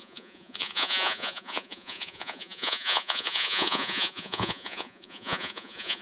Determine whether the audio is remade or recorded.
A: remade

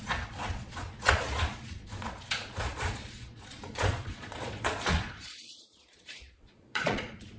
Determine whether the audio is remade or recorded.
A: remade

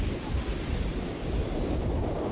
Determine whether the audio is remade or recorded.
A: recorded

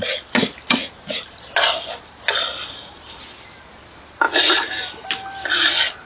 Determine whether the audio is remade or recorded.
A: recorded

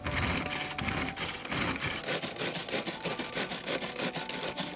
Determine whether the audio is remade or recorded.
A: recorded